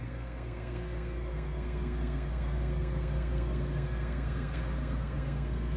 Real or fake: fake